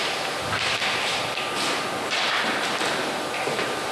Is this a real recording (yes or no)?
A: no